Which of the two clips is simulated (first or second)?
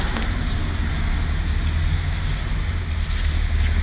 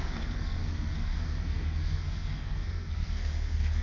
second